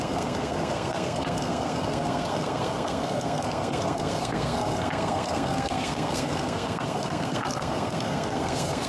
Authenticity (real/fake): fake